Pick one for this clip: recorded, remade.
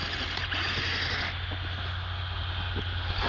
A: recorded